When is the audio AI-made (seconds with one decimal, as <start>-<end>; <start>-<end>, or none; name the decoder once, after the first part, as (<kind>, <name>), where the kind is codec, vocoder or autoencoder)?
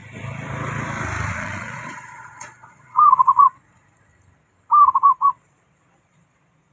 1.3-4.1 (vocoder, Vocos); 5.0-6.7